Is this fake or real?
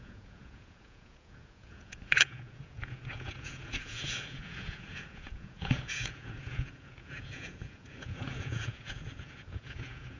fake